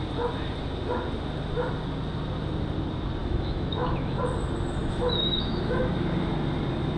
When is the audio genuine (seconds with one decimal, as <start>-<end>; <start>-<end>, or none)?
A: 0.0-3.2; 4.2-4.8; 5.9-7.0